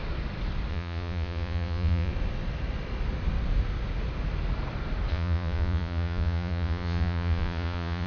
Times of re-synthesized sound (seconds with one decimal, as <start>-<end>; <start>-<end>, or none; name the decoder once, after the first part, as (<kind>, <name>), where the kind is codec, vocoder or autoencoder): 0.7-2.1 (vocoder, Vocos); 5.1-8.1